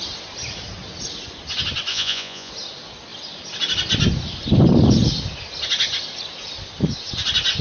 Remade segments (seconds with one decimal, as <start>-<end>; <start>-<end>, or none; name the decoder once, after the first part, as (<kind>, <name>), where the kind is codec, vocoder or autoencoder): 1.9-2.5 (vocoder, Vocos)